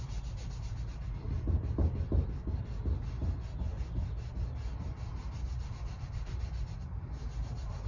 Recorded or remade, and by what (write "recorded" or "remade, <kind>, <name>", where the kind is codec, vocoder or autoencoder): recorded